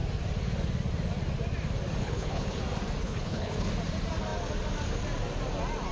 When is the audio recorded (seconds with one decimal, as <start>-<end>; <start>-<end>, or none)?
0.0-2.0; 2.6-3.0; 3.7-5.9